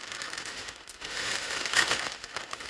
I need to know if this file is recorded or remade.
remade